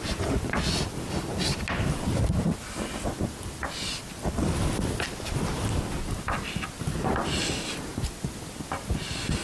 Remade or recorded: remade